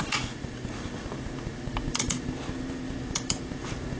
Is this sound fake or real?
fake